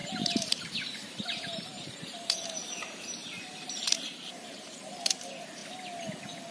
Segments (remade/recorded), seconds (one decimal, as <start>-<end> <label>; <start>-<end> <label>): 0.0-5.6 remade; 5.6-6.5 recorded